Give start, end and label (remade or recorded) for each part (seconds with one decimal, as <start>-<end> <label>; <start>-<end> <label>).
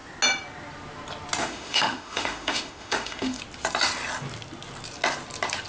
0.0-1.4 recorded; 1.4-3.4 remade; 3.4-5.7 recorded